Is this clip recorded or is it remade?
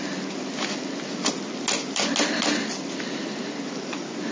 recorded